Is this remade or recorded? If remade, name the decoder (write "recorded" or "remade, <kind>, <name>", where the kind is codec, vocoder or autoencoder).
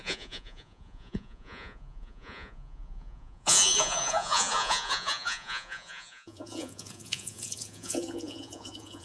remade, vocoder, Vocos